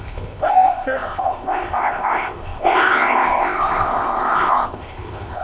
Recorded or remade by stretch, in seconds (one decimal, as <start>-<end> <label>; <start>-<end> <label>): 0.0-5.4 remade